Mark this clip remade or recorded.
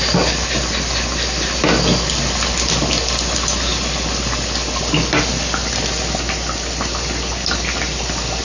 recorded